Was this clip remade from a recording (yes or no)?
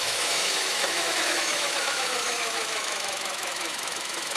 yes